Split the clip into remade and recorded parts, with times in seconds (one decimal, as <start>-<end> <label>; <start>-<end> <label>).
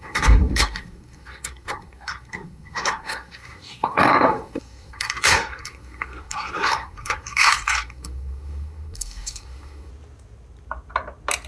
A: 0.0-9.9 remade; 9.9-11.5 recorded